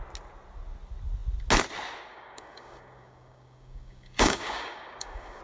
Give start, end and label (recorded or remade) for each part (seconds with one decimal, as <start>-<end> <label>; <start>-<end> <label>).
0.0-2.1 recorded; 2.1-5.4 remade